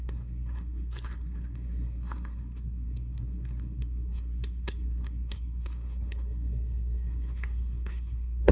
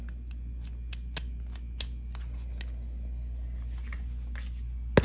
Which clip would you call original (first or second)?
second